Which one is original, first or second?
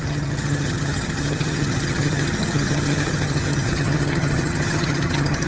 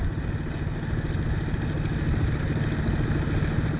second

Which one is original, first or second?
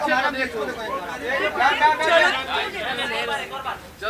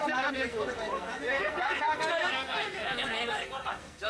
first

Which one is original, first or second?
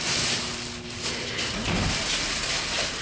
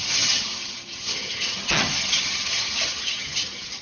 first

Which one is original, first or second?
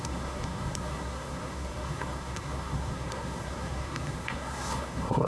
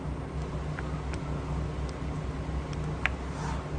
second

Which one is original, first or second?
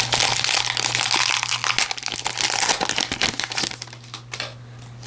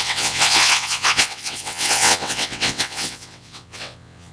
first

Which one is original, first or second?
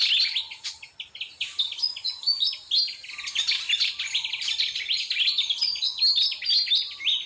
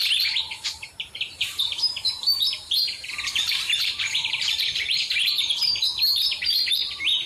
first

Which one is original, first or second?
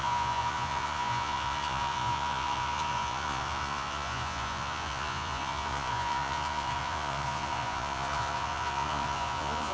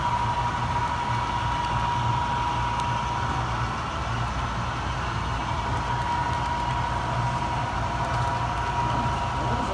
second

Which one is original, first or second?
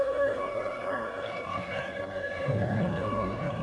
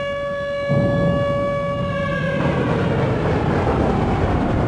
second